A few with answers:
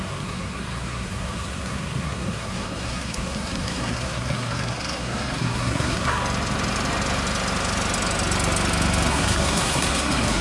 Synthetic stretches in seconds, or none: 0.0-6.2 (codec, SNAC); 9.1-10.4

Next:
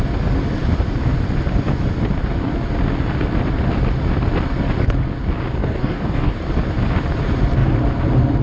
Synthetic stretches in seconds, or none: 5.6-6.3 (codec, DAC)

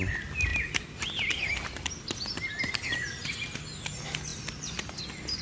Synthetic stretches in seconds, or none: none

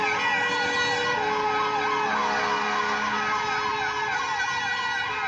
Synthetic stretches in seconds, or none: none

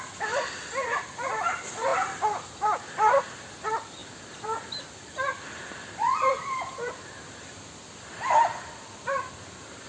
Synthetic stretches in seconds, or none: 0.0-1.9 (vocoder, BigVGAN v2); 3.2-4.0; 7.4-9.9

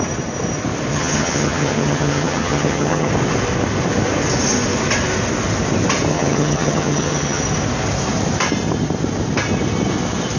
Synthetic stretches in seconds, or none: 0.9-3.1 (vocoder, HiFi-GAN); 6.1-7.4

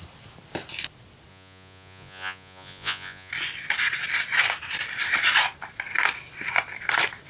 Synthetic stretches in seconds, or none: 1.3-3.3 (vocoder, Vocos)

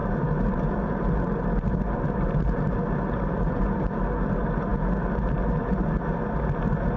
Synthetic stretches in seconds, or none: none